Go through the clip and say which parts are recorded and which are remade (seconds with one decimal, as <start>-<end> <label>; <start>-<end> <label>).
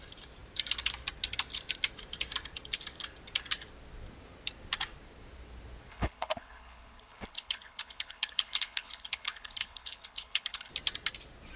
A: 0.0-5.9 recorded; 5.9-10.7 remade; 10.7-11.6 recorded